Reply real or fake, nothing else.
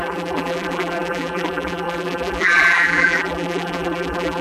fake